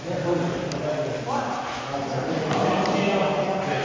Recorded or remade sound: recorded